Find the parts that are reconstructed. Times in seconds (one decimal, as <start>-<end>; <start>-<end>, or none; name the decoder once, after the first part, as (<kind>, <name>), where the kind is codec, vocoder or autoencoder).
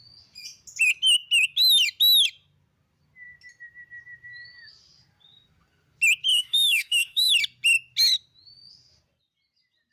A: 6.3-7.3 (autoencoder, DAC-VAE)